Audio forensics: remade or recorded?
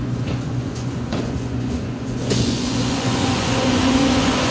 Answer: remade